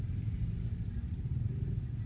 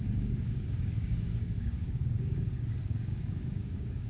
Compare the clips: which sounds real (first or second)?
first